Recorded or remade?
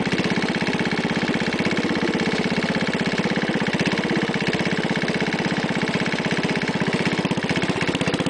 recorded